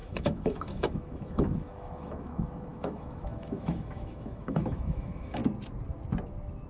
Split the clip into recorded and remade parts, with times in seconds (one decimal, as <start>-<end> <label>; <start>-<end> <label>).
0.0-5.4 remade; 5.4-6.7 recorded

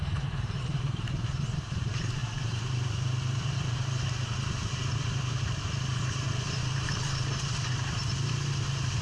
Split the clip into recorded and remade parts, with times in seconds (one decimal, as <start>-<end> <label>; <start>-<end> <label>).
0.0-8.0 remade; 8.0-8.5 recorded; 8.5-9.0 remade

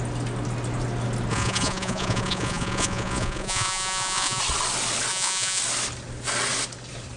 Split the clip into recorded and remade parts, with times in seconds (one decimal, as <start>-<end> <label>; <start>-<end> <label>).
0.0-1.3 recorded; 1.3-4.4 remade; 4.4-5.1 recorded; 5.1-5.6 remade; 5.6-7.2 recorded

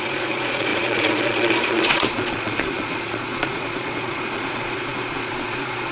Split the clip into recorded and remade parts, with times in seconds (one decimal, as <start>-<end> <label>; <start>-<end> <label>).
0.0-5.9 remade

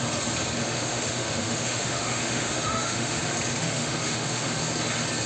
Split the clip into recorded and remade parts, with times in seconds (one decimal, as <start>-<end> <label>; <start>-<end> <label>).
0.0-0.6 recorded; 0.6-3.2 remade; 3.2-3.6 recorded; 3.6-4.6 remade; 4.6-5.3 recorded

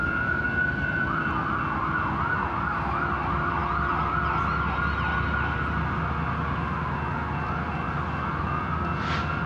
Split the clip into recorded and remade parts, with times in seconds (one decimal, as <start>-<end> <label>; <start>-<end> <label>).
0.0-9.5 recorded